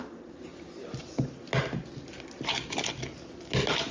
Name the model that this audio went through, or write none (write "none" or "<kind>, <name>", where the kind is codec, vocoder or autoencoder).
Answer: none